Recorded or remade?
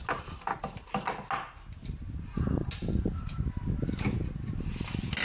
recorded